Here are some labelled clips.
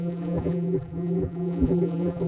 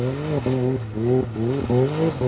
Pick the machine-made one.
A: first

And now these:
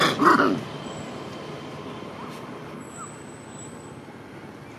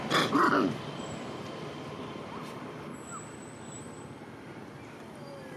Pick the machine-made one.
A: second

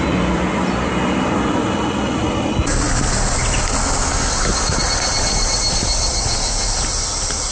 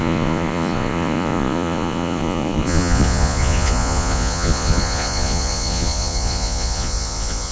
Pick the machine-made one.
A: second